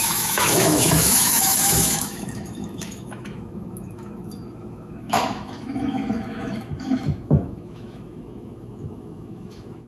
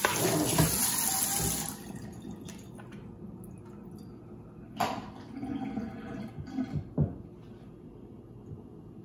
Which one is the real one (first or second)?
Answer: second